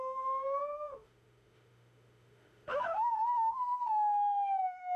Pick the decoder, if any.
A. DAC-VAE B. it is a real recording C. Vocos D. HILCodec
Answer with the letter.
A